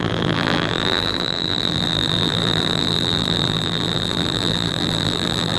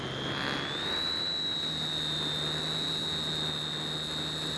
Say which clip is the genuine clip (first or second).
second